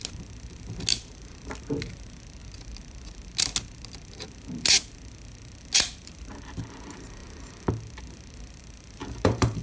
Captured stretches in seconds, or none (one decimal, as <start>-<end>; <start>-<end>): 0.0-0.9; 1.5-9.0